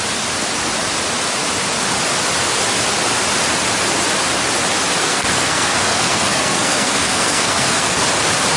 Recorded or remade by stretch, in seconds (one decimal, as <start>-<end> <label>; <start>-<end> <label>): 0.0-5.0 recorded; 5.0-8.0 remade; 8.0-8.6 recorded